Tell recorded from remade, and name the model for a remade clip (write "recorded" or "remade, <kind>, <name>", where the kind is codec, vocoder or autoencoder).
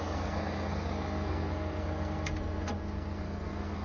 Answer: remade, codec, SNAC